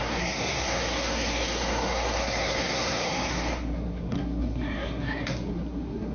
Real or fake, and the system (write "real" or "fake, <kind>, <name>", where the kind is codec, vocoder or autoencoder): fake, codec, SNAC